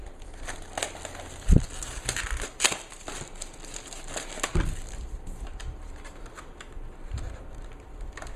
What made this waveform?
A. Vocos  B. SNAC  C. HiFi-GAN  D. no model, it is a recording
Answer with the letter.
D